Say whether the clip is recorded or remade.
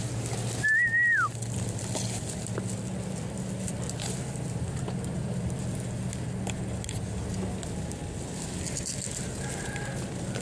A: recorded